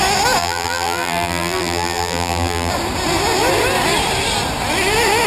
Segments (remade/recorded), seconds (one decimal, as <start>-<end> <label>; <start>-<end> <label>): 0.0-0.4 recorded; 0.4-2.7 remade; 2.7-5.3 recorded